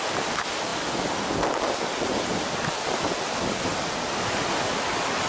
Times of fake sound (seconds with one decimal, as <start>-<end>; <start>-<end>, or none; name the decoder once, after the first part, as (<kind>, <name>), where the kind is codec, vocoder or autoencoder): none